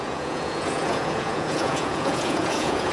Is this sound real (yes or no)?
no